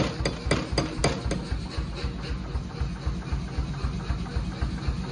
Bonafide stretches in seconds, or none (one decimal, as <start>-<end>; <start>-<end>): 0.0-5.1